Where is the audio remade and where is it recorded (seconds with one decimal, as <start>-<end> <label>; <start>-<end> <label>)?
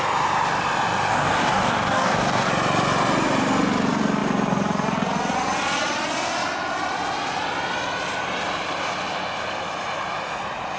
0.0-1.1 recorded; 1.1-2.5 remade; 2.5-10.8 recorded